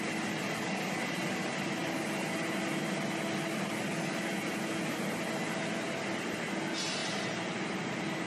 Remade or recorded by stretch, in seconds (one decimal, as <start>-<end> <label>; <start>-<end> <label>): 0.0-8.3 recorded